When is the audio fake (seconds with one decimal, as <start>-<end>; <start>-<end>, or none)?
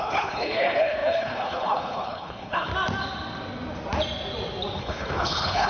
0.0-2.7; 4.8-5.7